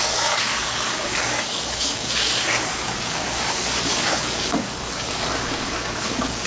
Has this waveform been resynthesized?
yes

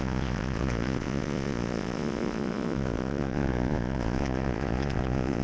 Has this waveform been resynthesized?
yes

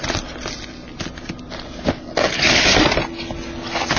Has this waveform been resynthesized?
no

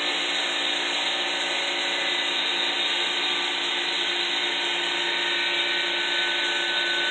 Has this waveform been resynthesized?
no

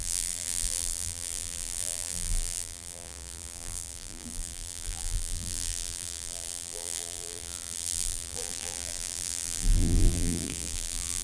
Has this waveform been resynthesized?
yes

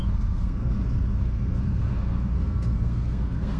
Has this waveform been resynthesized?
yes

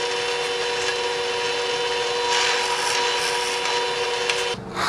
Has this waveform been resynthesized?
no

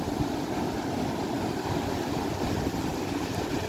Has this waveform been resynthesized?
no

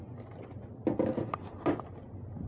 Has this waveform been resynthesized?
no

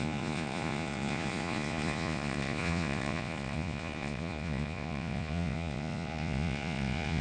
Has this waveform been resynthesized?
yes